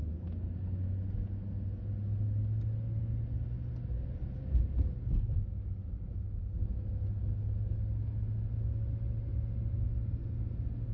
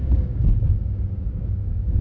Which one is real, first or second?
first